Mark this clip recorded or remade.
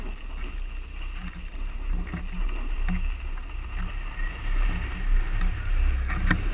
recorded